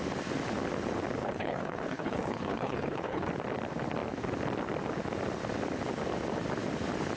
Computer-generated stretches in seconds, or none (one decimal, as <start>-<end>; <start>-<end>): 1.2-3.3